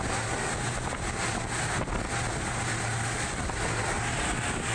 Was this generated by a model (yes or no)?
no